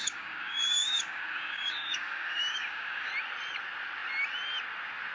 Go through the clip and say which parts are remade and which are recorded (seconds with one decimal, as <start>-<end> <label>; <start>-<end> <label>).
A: 0.0-3.1 remade; 3.1-5.1 recorded

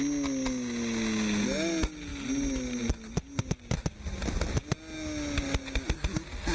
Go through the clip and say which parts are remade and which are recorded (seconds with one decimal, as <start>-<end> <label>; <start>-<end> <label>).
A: 0.0-6.5 recorded

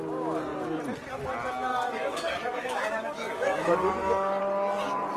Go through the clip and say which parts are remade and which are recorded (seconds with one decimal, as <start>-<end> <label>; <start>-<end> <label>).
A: 0.0-1.7 recorded; 1.7-4.4 remade; 4.4-5.2 recorded